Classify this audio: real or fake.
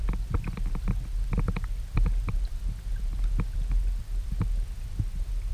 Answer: real